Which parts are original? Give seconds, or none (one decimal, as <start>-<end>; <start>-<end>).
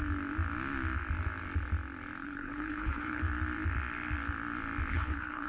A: 0.0-2.2; 3.2-4.9